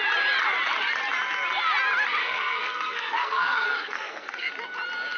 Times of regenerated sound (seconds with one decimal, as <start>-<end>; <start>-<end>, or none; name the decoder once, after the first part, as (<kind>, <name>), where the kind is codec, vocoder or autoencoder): 2.2-4.5 (codec, SNAC)